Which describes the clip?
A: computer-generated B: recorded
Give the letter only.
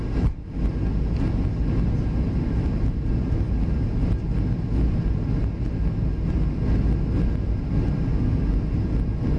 B